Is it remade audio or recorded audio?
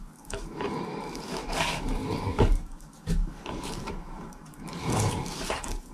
remade